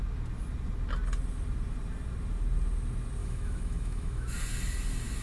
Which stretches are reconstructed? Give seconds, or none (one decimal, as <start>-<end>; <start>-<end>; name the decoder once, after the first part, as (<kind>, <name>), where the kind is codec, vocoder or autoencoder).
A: 3.2-4.4 (autoencoder, DAC-VAE)

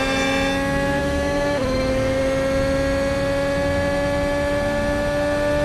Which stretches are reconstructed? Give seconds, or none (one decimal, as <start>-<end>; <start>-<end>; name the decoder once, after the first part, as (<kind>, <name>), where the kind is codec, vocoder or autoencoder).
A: 1.0-2.2 (autoencoder, DAC-VAE)

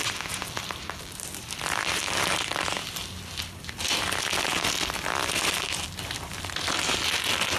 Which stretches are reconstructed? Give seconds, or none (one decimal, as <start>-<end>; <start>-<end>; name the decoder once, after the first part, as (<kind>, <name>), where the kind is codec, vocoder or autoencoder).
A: none

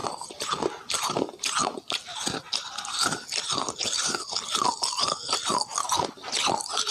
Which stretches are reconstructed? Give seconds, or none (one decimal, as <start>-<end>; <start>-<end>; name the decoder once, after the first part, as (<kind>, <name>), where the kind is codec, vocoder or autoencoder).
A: none